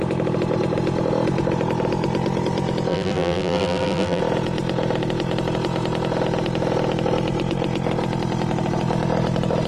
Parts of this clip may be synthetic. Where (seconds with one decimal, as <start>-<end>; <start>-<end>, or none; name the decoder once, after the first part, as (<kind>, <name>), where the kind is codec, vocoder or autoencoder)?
2.9-4.2 (vocoder, BigVGAN v2)